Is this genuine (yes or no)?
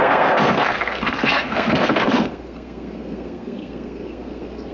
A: no